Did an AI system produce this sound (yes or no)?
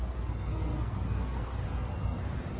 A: yes